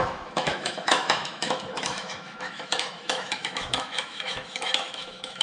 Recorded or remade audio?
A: remade